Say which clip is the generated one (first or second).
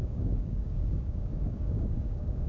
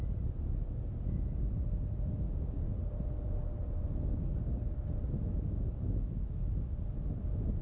first